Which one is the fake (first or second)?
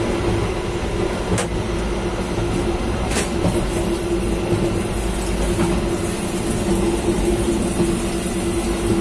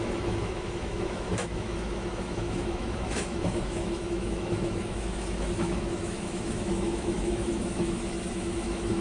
second